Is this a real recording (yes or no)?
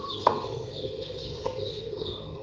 no